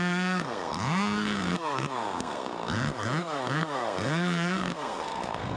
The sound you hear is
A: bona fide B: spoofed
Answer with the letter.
B